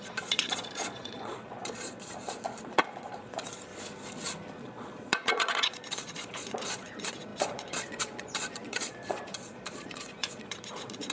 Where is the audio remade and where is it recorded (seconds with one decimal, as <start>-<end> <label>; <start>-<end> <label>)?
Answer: 0.0-3.7 remade; 3.7-4.6 recorded; 4.6-11.1 remade